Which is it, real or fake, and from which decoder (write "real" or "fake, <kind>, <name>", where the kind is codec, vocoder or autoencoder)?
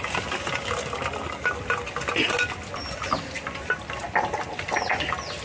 real